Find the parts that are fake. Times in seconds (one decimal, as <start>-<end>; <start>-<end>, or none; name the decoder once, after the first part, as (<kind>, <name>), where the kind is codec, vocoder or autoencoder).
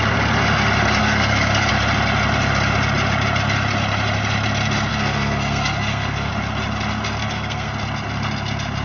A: 1.0-1.7 (codec, SNAC); 4.9-6.3; 7.2-7.7